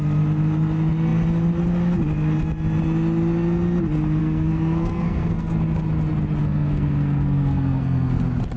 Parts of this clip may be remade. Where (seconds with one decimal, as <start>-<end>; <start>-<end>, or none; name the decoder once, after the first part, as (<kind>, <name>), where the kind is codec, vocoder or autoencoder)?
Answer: 4.2-5.6 (codec, SNAC); 6.4-8.2